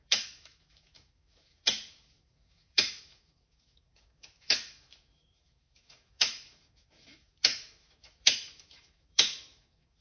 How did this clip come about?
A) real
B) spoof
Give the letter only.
B